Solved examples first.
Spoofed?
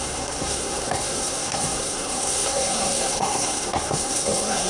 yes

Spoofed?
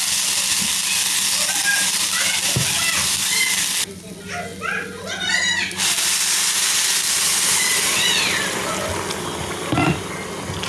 no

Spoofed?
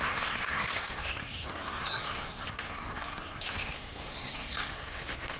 yes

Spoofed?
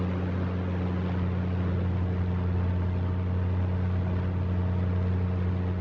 no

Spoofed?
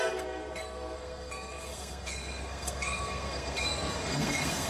yes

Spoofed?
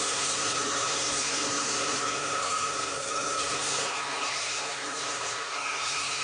yes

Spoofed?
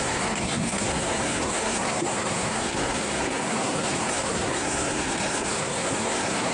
yes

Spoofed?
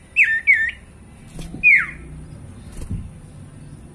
no